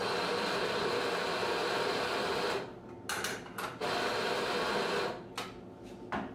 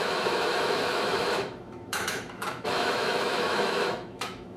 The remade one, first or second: second